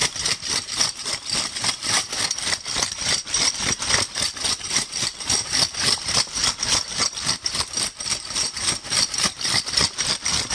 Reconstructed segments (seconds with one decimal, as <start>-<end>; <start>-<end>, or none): 0.0-6.4; 7.0-10.5